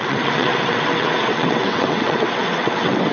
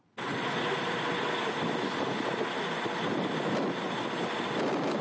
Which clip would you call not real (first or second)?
first